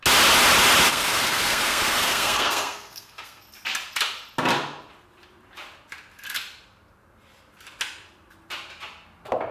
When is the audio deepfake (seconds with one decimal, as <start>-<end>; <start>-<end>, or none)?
0.9-3.4